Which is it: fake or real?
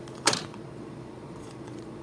fake